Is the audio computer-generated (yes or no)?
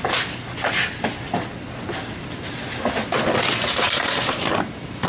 no